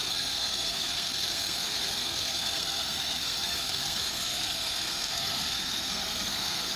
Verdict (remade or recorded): remade